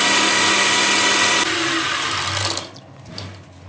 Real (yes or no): yes